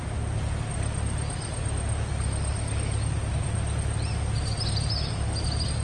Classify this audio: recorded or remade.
recorded